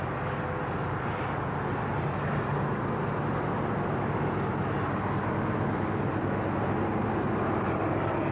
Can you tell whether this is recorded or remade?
recorded